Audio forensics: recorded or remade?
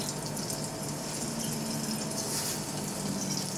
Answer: recorded